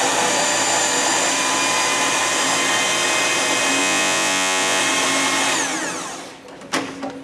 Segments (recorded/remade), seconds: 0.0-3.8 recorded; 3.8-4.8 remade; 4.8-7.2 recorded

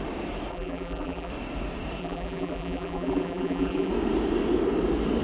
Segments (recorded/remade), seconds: 0.0-0.5 recorded; 0.5-1.3 remade; 1.3-2.0 recorded; 2.0-3.9 remade; 3.9-5.2 recorded